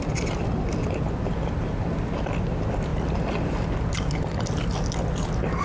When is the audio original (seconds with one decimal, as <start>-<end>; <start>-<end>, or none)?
0.0-5.6